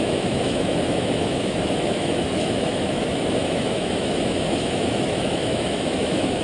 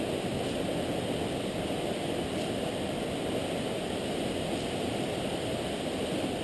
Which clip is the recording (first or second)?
second